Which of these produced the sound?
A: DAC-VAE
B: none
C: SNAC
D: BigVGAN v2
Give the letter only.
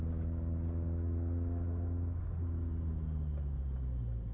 B